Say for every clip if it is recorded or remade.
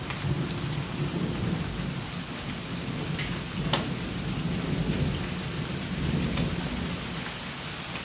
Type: recorded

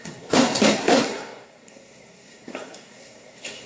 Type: remade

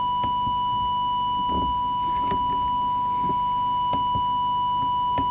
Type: recorded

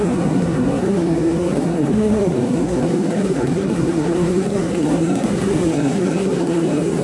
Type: remade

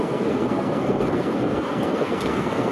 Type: remade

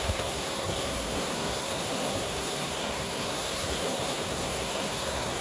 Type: remade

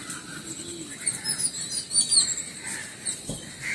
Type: recorded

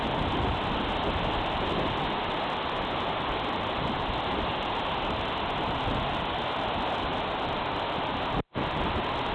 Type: recorded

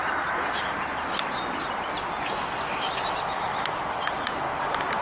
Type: recorded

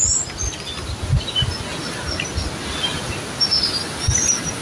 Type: recorded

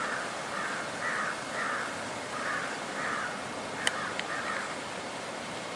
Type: recorded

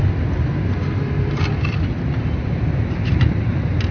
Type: recorded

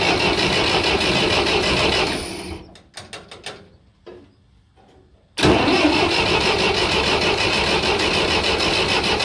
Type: recorded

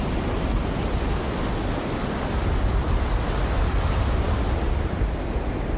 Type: recorded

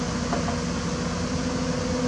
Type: recorded